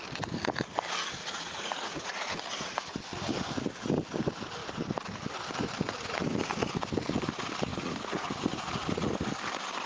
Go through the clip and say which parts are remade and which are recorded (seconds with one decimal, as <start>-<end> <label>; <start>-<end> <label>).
0.0-1.2 recorded; 1.2-2.4 remade; 2.4-7.7 recorded; 7.7-9.1 remade; 9.1-9.9 recorded